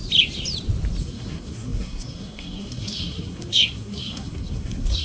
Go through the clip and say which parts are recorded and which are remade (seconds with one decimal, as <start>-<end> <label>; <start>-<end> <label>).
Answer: 0.0-1.0 recorded; 1.0-5.0 remade

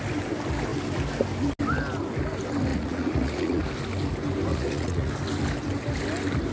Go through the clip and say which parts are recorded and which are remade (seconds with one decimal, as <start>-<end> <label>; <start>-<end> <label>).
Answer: 0.0-2.7 recorded; 2.7-3.6 remade; 3.6-4.5 recorded; 4.5-5.1 remade; 5.1-6.5 recorded

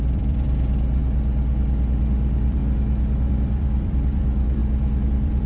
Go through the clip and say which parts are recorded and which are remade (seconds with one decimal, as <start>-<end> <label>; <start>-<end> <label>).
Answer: 0.0-1.0 remade; 1.0-2.0 recorded; 2.0-2.6 remade; 2.6-3.3 recorded; 3.3-4.6 remade; 4.6-5.1 recorded; 5.1-5.5 remade